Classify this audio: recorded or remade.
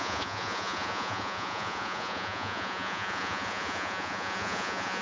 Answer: remade